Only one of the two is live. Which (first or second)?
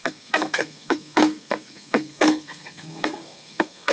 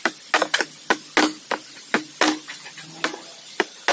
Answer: second